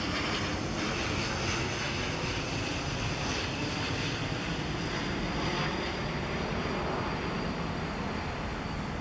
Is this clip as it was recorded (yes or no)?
yes